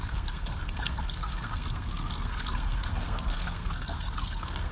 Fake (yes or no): yes